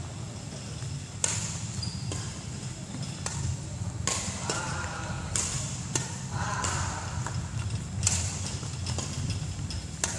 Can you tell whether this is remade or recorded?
recorded